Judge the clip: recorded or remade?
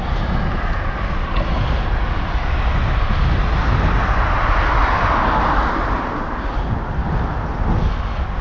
recorded